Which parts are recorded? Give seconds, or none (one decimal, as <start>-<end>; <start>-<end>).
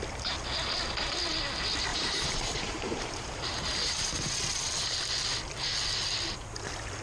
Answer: 0.0-1.9; 4.1-7.0